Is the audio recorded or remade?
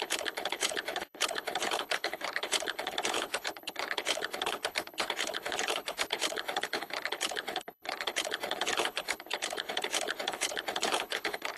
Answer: remade